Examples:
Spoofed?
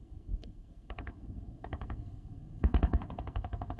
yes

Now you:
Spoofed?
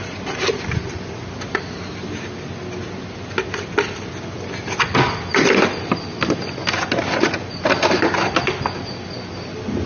no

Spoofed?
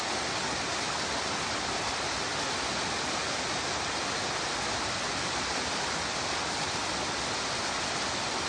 no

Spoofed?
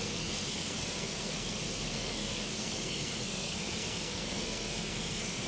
yes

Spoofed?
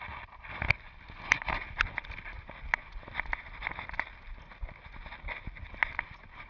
no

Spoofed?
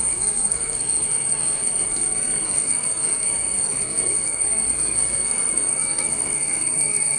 yes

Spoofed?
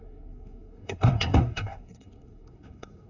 yes